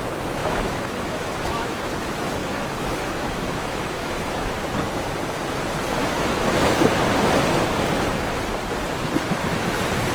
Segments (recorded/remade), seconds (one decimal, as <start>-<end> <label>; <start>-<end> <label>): 0.0-0.4 recorded; 0.4-1.9 remade; 1.9-2.4 recorded; 2.4-4.6 remade; 4.6-6.0 recorded; 6.0-6.8 remade; 6.8-10.1 recorded